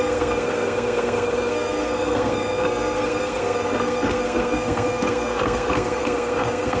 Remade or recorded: remade